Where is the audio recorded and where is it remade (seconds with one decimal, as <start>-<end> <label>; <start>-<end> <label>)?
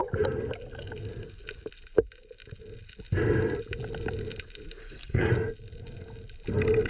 0.0-4.8 recorded; 4.8-5.3 remade; 5.3-6.9 recorded